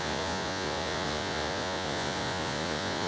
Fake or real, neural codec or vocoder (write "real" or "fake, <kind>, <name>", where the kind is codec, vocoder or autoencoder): fake, vocoder, Vocos